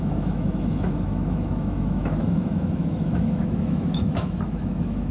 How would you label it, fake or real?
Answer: fake